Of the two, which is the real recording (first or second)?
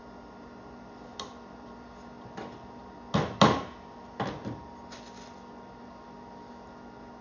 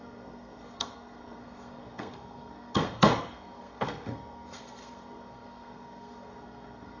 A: first